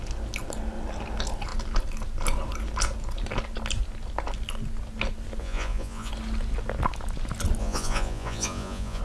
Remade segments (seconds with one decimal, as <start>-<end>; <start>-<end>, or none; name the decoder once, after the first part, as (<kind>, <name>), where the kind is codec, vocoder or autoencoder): 5.4-6.1 (vocoder, Vocos); 7.6-9.0